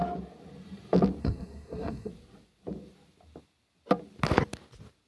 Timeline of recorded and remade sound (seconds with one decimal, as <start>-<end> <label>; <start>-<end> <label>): 0.0-1.2 recorded; 1.2-2.1 remade; 2.1-5.1 recorded